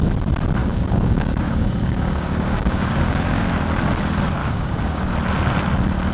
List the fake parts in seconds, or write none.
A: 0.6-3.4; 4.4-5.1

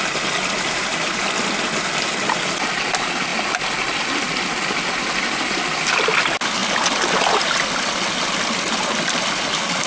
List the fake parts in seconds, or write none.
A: none

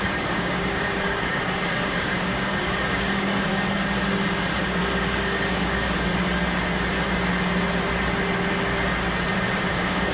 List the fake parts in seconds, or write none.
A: 0.0-3.5; 4.6-6.1; 9.7-10.1